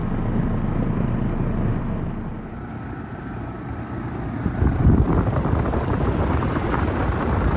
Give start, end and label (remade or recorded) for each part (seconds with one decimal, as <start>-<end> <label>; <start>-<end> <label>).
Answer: 0.0-3.1 recorded; 3.1-3.8 remade; 3.8-5.7 recorded; 5.7-7.6 remade